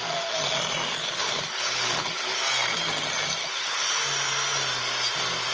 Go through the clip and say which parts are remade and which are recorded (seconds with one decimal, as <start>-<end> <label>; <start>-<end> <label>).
0.0-0.9 recorded; 0.9-2.4 remade; 2.4-3.4 recorded; 3.4-4.0 remade; 4.0-5.5 recorded